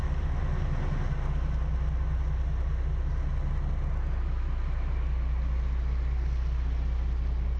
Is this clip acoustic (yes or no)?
yes